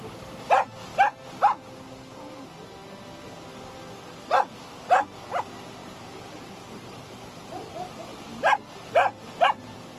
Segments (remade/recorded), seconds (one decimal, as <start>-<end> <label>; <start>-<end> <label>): 0.0-5.8 recorded; 5.8-6.6 remade; 6.6-10.0 recorded